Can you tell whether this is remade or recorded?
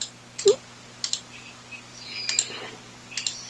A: recorded